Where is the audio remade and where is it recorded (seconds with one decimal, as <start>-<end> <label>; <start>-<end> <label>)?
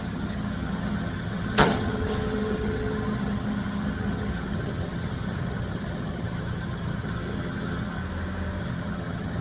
0.0-8.0 remade; 8.0-8.6 recorded; 8.6-9.4 remade